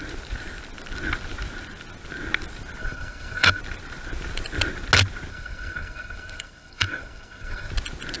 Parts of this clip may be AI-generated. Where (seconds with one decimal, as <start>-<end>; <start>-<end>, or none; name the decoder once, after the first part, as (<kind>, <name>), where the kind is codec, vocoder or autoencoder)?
2.8-3.6 (codec, SNAC); 5.3-7.7